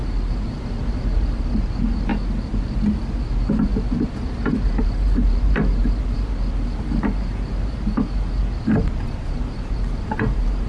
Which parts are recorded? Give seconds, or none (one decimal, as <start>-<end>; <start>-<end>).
2.1-3.3; 3.7-4.8